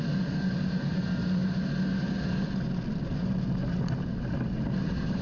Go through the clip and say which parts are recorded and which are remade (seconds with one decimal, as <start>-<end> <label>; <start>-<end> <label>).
0.0-5.2 recorded